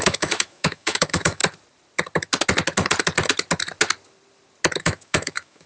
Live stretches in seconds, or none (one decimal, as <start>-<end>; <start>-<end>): 1.4-4.8